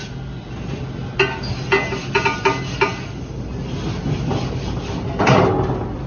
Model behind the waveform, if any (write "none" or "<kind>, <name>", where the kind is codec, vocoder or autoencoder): none